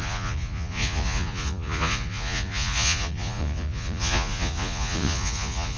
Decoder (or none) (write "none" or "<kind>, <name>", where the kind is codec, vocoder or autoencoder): vocoder, Vocos